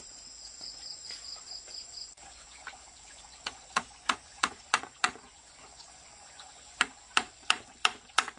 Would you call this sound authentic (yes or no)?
no